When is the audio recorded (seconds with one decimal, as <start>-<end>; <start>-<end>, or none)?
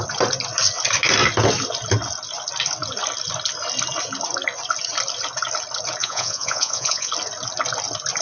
0.0-6.0; 7.1-8.2